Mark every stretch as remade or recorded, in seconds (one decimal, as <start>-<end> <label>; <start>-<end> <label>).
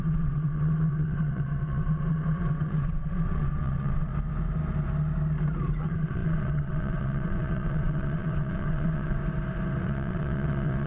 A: 0.0-4.1 remade; 4.1-5.8 recorded; 5.8-9.2 remade; 9.2-9.8 recorded; 9.8-10.9 remade